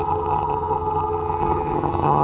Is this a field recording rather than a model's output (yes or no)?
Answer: no